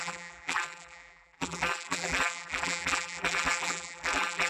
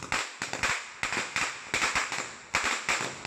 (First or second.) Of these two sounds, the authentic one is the second